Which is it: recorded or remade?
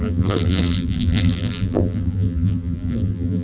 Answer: remade